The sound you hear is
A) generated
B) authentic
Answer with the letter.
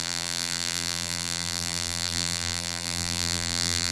A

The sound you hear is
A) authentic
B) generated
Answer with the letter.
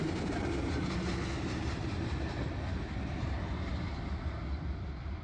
A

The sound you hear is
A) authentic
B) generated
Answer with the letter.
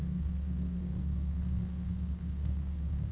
B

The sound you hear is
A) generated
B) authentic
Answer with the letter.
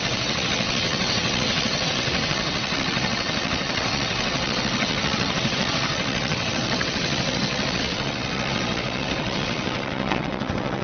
A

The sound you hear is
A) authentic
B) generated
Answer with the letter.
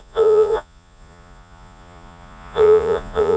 B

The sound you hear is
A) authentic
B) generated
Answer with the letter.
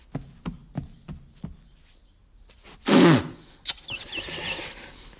A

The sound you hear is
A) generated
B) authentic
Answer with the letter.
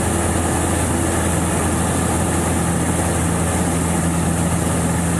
B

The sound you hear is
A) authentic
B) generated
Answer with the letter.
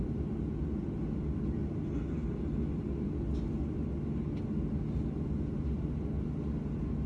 A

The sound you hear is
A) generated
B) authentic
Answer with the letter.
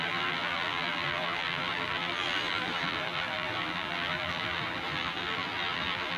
A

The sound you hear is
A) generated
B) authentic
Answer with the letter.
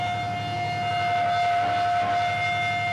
B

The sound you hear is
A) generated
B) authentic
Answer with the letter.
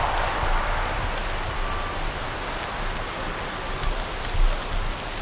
B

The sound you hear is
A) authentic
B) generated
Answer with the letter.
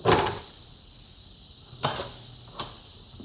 A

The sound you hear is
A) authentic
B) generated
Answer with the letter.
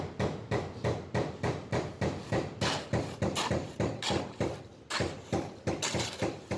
A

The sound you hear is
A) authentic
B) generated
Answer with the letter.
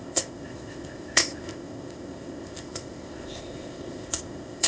B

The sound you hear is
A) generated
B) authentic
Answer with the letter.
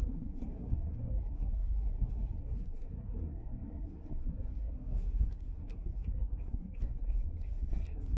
A